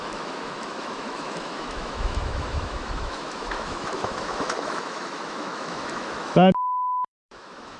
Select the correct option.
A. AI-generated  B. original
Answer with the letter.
A